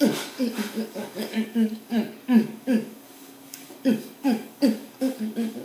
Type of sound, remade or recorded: remade